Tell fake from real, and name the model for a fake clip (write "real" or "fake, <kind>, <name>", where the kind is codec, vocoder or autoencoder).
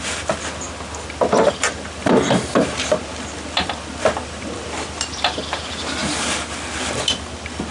fake, vocoder, BigVGAN v2